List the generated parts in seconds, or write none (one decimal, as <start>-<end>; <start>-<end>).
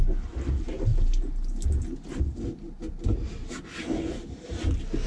none